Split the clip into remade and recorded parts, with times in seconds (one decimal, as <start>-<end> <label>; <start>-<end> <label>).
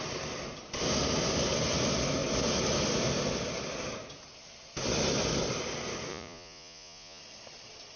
0.0-6.1 recorded; 6.1-7.2 remade; 7.2-8.0 recorded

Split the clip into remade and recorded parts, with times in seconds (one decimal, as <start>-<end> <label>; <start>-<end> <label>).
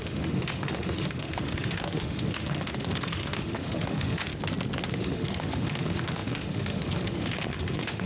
0.0-4.3 remade; 4.3-4.9 recorded; 4.9-8.1 remade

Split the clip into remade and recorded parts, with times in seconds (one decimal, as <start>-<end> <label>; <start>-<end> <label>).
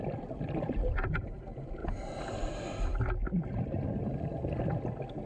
0.0-1.8 remade; 1.8-5.3 recorded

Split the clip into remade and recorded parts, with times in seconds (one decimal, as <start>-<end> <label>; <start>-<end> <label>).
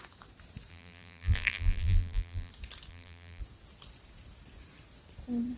0.0-0.7 recorded; 0.7-2.5 remade; 2.5-2.9 recorded; 2.9-3.4 remade; 3.4-5.6 recorded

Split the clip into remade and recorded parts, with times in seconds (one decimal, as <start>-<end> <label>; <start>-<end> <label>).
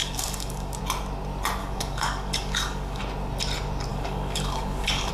0.0-0.8 remade; 0.8-1.6 recorded; 1.6-3.0 remade; 3.0-3.9 recorded; 3.9-5.1 remade